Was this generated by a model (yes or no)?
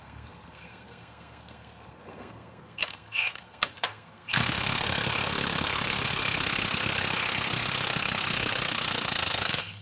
yes